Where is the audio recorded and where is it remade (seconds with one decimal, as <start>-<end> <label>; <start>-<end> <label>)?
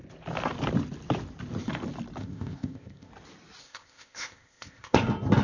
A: 0.0-2.2 recorded; 2.2-3.1 remade; 3.1-3.6 recorded; 3.6-5.0 remade; 5.0-5.4 recorded